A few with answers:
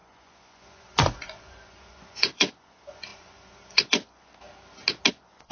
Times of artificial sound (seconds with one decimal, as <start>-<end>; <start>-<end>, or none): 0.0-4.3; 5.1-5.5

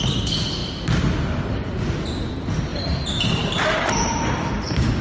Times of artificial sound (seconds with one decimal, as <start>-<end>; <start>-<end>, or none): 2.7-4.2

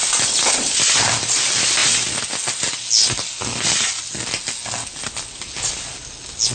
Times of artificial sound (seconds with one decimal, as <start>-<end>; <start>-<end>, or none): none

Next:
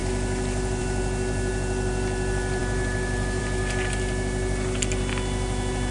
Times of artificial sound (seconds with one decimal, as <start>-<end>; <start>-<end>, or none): none

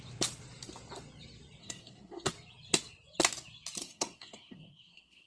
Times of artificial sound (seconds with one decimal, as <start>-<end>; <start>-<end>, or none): 1.6-2.3; 3.8-5.3

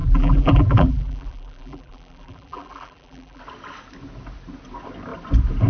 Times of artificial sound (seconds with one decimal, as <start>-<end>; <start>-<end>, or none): 0.0-3.4

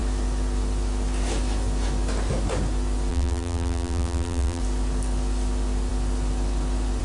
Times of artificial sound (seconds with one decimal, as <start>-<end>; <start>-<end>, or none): 3.1-4.6